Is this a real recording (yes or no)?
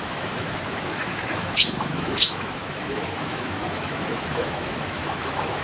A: no